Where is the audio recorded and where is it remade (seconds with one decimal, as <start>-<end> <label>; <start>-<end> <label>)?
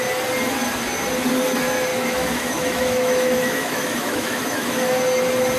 0.0-1.9 recorded; 1.9-4.9 remade; 4.9-5.6 recorded